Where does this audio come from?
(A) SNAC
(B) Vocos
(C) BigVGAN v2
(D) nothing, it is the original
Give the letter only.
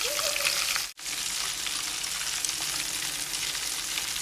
D